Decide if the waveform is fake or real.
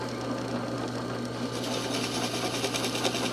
real